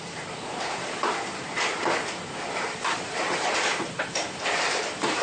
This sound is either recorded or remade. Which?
remade